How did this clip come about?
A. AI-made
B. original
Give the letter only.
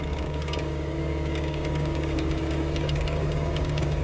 A